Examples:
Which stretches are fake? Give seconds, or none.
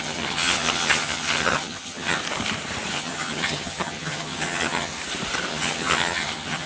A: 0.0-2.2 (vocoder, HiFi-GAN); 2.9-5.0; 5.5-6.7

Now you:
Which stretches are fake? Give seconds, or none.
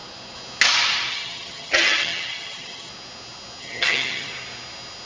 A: 1.1-2.9 (vocoder, HiFi-GAN); 3.6-4.3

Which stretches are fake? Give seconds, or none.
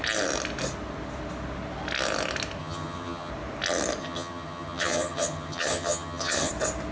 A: 2.6-3.3 (vocoder, HiFi-GAN); 4.0-6.5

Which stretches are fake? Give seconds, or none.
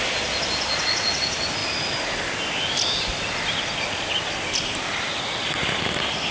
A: none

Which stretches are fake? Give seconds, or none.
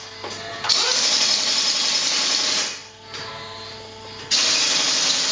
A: none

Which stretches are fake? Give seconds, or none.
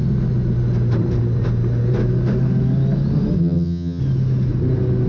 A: 3.4-4.0 (vocoder, HiFi-GAN)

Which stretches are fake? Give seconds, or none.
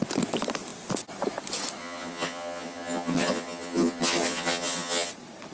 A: 1.8-5.1 (vocoder, HiFi-GAN)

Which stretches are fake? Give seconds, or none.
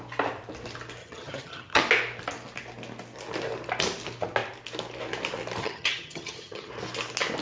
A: 1.0-1.8 (vocoder, HiFi-GAN); 5.6-6.7